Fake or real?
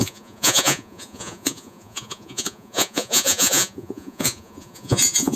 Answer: fake